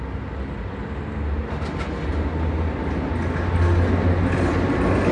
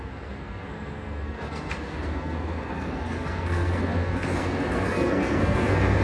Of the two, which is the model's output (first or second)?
second